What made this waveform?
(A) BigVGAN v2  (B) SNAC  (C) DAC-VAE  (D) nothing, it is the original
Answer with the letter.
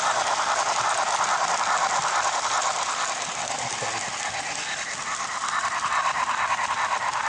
A